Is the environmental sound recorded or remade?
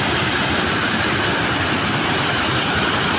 recorded